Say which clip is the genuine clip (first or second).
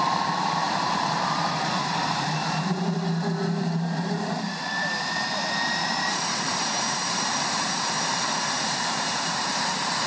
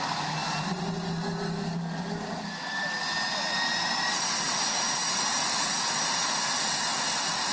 second